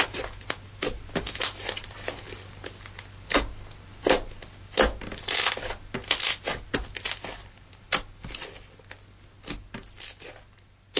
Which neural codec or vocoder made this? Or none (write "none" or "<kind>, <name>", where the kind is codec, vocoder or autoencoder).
none